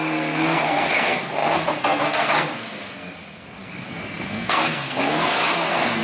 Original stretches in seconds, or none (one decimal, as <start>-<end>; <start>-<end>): none